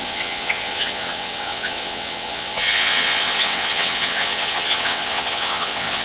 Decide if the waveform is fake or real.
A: fake